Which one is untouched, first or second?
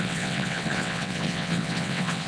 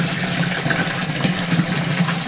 second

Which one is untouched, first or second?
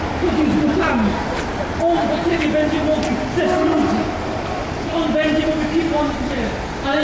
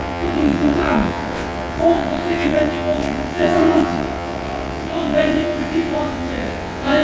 first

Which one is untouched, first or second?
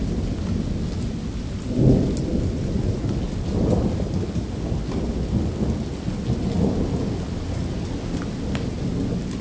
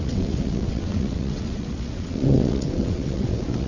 first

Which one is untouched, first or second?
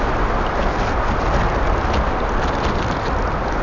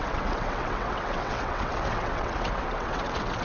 first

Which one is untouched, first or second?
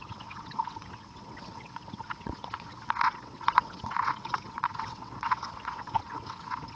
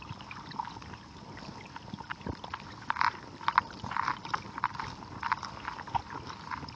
second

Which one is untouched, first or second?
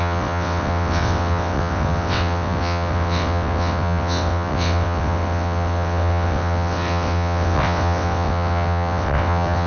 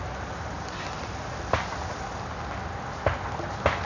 second